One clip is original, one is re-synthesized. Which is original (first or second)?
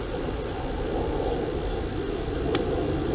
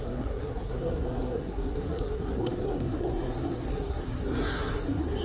first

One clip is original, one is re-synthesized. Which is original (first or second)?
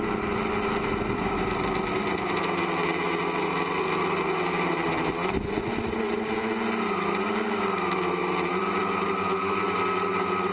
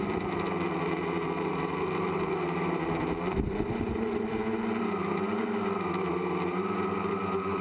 first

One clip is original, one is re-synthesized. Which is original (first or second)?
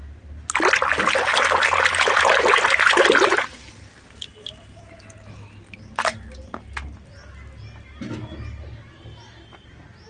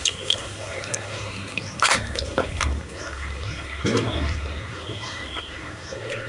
first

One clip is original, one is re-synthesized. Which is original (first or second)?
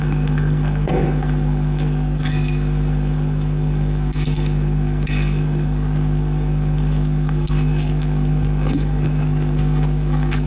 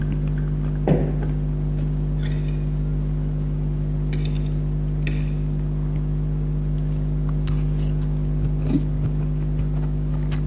second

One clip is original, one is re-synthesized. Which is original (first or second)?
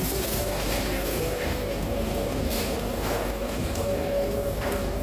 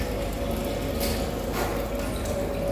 second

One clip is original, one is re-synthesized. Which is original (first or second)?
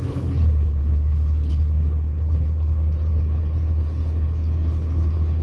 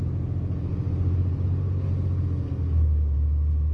second